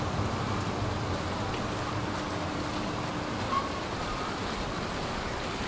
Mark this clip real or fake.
real